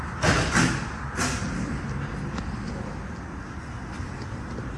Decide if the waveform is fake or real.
real